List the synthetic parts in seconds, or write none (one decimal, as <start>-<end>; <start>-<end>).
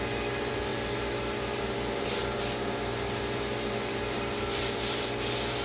0.0-5.6